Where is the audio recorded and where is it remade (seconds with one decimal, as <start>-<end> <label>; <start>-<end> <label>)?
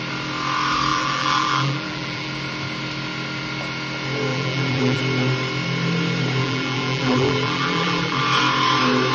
0.0-0.9 recorded; 0.9-2.3 remade; 2.3-4.3 recorded; 4.3-5.0 remade; 5.0-6.4 recorded; 6.4-8.2 remade; 8.2-9.1 recorded